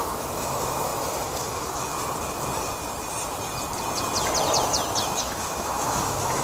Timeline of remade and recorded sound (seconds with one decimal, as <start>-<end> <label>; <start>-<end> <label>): 0.0-1.9 remade; 1.9-5.2 recorded; 5.2-6.4 remade